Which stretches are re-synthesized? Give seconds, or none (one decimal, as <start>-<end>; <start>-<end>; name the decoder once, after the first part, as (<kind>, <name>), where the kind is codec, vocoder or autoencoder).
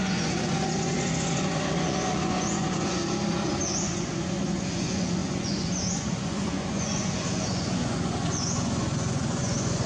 0.0-3.0 (vocoder, Vocos); 3.6-9.9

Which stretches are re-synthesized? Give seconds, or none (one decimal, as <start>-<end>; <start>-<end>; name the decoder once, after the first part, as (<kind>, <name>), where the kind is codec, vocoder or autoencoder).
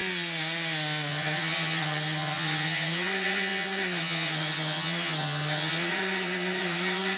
1.1-7.2 (vocoder, HiFi-GAN)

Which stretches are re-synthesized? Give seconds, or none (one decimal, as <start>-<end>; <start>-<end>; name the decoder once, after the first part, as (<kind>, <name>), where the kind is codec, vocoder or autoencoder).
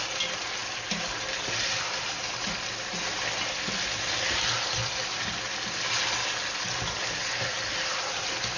none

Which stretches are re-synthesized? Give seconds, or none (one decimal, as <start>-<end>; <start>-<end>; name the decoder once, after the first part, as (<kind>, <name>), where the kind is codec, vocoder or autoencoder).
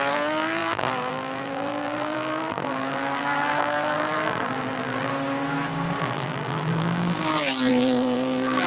0.0-5.1 (vocoder, BigVGAN v2); 6.0-8.7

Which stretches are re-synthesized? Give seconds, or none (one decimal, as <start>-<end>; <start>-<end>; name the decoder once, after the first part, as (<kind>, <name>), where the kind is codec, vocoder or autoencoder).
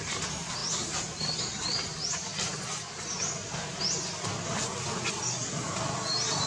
none